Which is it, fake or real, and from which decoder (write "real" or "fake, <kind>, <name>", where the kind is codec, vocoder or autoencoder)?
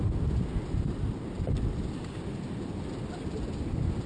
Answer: real